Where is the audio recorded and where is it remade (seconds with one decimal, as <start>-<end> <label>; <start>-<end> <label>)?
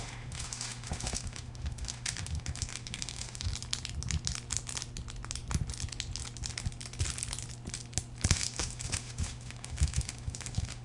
0.0-3.5 remade; 3.5-8.3 recorded; 8.3-10.8 remade